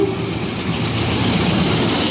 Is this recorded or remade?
recorded